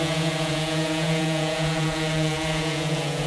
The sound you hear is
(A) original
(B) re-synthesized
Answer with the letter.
B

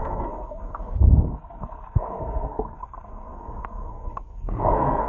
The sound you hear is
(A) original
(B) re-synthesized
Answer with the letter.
B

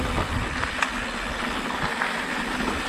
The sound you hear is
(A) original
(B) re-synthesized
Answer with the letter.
A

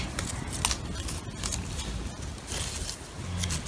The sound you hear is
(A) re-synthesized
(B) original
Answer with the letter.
B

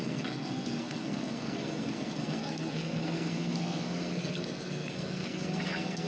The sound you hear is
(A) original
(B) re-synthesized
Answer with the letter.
B